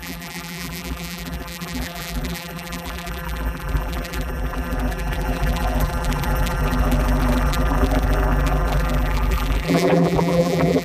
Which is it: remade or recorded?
remade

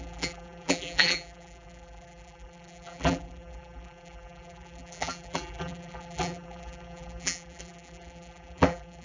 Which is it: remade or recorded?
remade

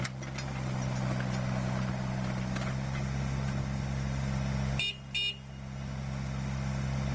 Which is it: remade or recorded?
recorded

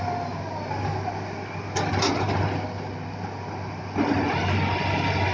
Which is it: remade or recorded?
recorded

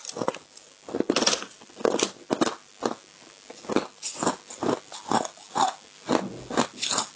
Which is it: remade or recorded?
recorded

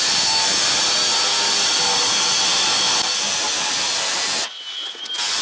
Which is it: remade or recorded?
remade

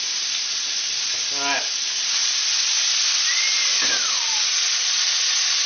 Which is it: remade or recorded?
remade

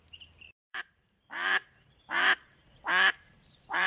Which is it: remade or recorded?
remade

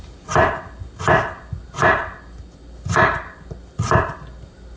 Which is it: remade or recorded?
recorded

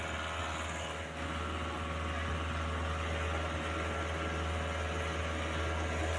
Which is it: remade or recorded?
recorded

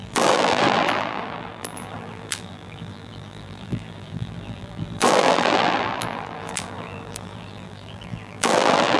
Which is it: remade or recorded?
remade